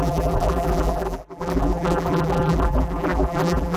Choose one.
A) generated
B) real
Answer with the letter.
A